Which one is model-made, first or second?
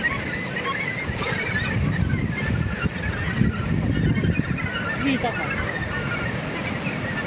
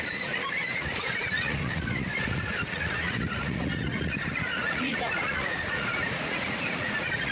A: second